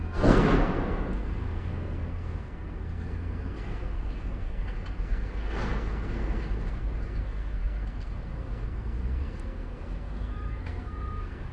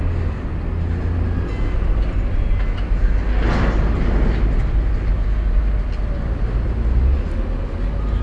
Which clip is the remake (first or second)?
first